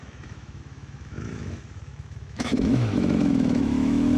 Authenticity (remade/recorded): remade